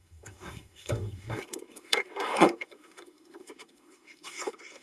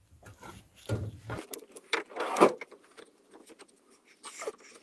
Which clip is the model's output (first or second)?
first